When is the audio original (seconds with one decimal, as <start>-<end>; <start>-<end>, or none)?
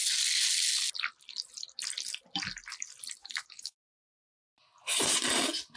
0.0-3.2; 4.0-5.8